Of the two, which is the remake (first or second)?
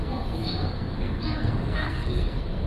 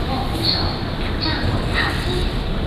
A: first